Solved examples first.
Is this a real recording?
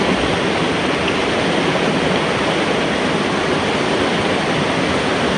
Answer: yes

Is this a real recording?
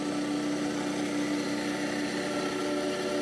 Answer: yes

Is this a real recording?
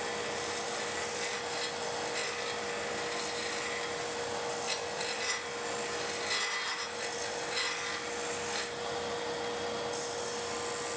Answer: yes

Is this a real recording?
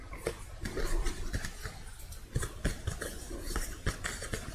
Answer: yes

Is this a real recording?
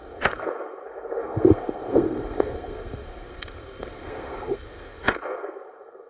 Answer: no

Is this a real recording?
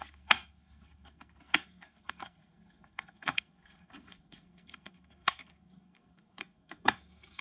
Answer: no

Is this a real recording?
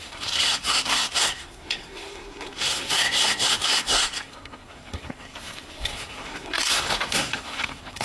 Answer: no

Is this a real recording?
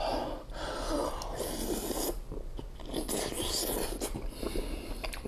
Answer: yes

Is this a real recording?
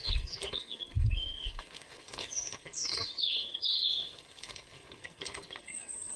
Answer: no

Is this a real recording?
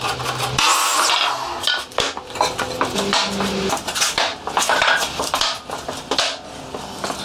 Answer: yes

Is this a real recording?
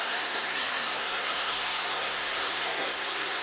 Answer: no